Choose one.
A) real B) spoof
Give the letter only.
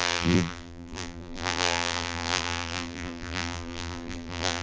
B